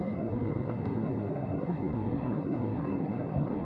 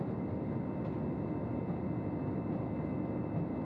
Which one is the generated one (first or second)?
first